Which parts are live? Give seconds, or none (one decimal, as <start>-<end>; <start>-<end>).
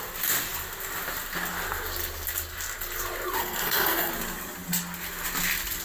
0.0-3.4; 4.1-5.8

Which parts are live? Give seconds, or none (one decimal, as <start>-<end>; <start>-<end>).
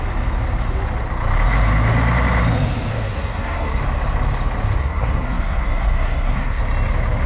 0.0-2.9; 3.8-4.8; 6.6-7.3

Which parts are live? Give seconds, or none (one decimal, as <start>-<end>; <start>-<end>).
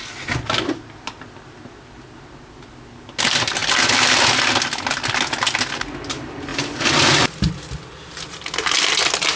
0.0-9.4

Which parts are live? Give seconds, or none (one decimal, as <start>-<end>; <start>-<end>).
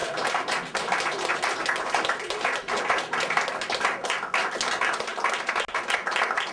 0.0-6.5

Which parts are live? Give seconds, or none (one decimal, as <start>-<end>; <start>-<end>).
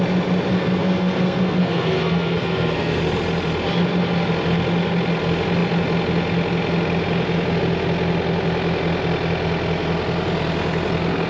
0.0-0.5; 3.0-11.3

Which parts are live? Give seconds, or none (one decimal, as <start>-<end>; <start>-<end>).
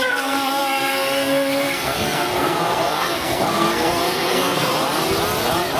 4.7-5.8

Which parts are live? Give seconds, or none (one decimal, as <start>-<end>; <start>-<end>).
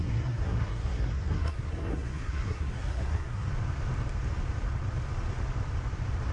3.5-6.3